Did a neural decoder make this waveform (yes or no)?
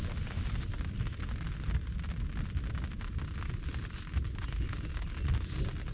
no